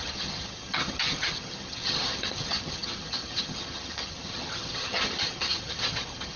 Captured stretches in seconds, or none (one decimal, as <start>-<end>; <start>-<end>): none

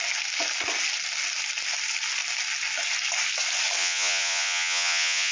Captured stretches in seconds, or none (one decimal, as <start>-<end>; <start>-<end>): 0.0-3.8

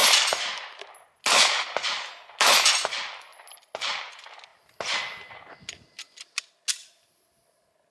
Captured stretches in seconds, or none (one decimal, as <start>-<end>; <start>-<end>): 0.8-7.9

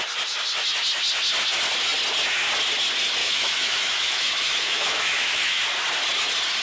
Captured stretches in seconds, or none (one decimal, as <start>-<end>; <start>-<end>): 0.0-3.2; 5.6-6.6

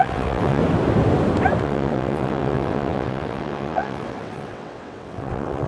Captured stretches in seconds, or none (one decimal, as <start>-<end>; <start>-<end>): 0.6-1.6

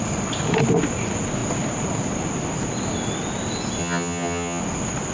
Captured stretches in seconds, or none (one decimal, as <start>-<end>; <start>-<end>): 0.0-3.8; 4.6-5.1